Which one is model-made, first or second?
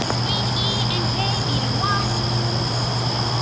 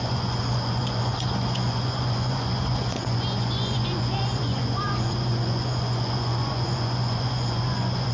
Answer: second